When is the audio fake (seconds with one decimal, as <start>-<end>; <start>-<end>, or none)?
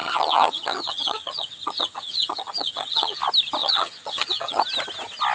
0.0-3.2; 3.6-4.6